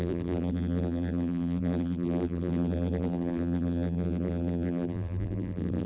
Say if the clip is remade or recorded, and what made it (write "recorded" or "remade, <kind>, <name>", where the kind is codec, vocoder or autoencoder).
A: remade, vocoder, BigVGAN v2